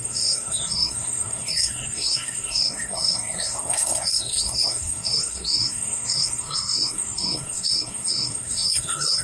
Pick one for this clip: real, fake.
fake